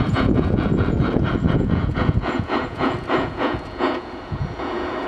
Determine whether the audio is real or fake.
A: fake